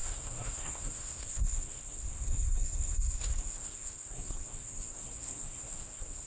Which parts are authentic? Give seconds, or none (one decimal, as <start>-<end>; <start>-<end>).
none